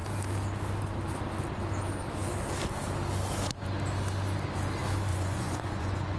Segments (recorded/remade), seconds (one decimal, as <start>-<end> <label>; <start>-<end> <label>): 0.0-5.1 recorded; 5.1-6.2 remade